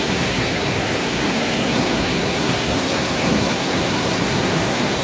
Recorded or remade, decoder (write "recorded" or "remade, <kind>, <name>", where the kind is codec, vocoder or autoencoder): remade, codec, SNAC